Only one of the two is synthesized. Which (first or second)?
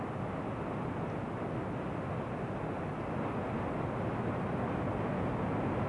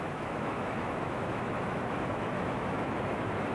second